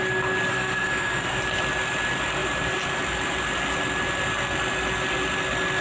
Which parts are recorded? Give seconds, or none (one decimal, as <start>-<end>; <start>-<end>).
0.0-0.5; 1.4-5.8